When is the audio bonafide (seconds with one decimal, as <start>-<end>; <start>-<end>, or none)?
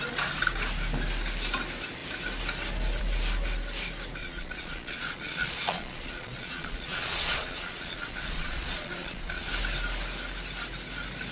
0.0-4.2; 9.5-11.3